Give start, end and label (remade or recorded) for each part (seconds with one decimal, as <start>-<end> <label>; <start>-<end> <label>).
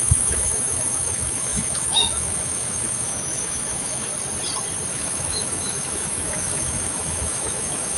0.0-4.1 remade; 4.1-4.9 recorded; 4.9-8.0 remade